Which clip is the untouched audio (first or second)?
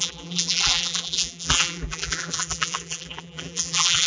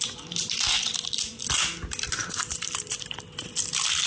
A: second